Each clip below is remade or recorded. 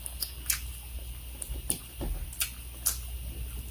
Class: recorded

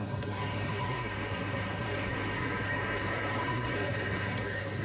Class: remade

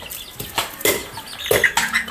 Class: recorded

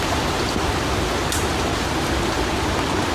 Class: recorded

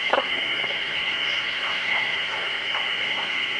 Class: remade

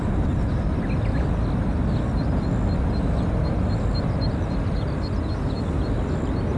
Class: recorded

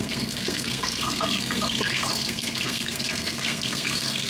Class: remade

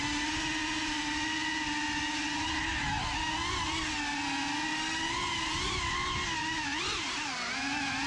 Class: recorded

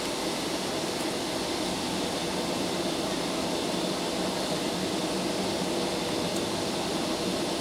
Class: recorded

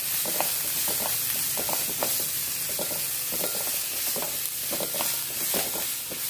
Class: recorded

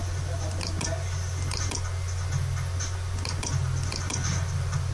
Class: recorded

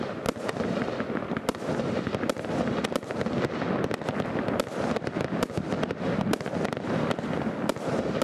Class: recorded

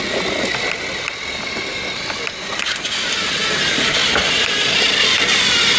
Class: recorded